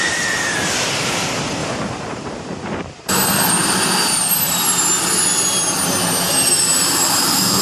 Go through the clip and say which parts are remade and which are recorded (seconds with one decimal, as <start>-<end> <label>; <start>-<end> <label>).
0.0-1.6 recorded; 1.6-3.1 remade; 3.1-6.7 recorded; 6.7-7.6 remade